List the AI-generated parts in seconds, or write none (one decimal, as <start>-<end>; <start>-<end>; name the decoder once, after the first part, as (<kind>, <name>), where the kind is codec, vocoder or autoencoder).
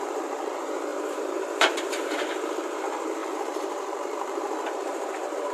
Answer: 0.0-5.5 (vocoder, BigVGAN v2)